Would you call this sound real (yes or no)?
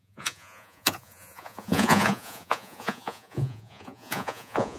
no